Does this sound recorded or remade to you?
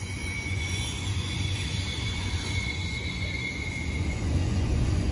remade